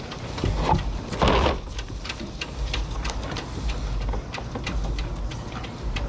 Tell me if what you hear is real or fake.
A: real